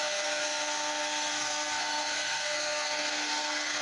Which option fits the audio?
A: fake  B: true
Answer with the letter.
A